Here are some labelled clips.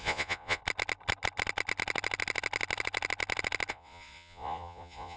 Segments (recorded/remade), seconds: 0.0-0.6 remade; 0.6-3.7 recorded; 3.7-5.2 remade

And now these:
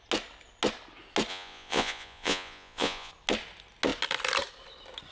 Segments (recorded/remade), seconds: 0.0-1.3 recorded; 1.3-3.1 remade; 3.1-5.1 recorded